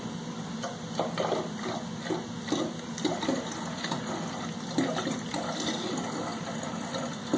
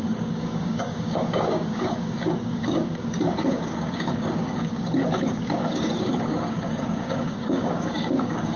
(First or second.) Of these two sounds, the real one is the first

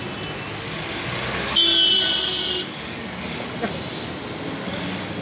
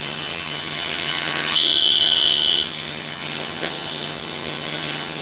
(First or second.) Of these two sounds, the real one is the first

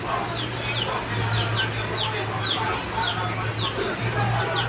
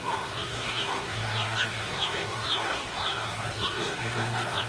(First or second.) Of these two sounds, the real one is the first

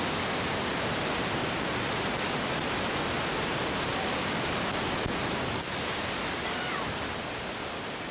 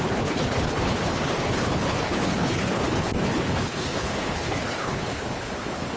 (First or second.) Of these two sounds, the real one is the first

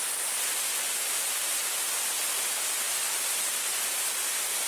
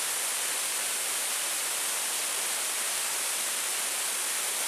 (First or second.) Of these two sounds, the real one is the first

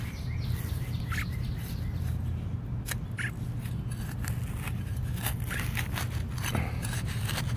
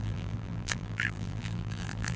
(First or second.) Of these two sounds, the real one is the first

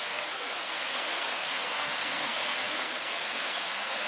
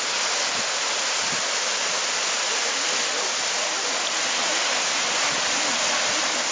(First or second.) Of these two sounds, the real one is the second